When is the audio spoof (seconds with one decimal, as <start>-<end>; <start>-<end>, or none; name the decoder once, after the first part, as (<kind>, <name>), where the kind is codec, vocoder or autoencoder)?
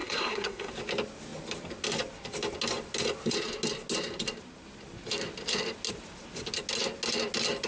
0.0-0.7 (codec, SNAC)